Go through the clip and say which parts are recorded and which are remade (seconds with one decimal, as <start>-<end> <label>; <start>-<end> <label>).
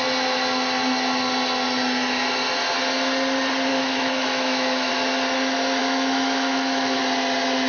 0.0-3.7 recorded; 3.7-4.9 remade; 4.9-5.8 recorded; 5.8-7.0 remade; 7.0-7.7 recorded